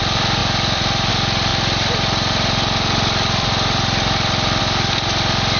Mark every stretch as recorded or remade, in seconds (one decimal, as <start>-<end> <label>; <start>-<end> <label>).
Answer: 0.0-0.4 recorded; 0.4-1.1 remade; 1.1-1.5 recorded; 1.5-4.6 remade; 4.6-5.6 recorded